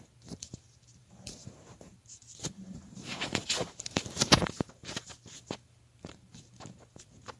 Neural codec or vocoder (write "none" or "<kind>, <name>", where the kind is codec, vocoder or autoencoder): vocoder, BigVGAN v2